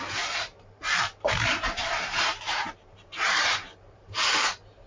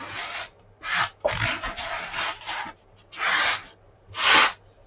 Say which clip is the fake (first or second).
first